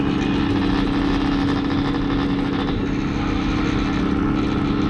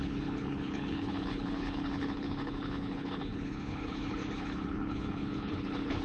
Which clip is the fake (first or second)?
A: second